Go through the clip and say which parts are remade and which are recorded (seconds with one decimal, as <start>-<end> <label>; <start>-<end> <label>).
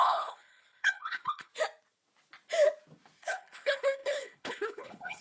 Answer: 0.0-1.5 remade; 1.5-3.3 recorded; 3.3-5.2 remade